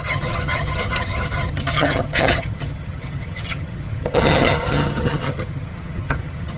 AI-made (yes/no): yes